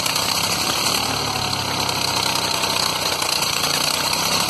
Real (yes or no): yes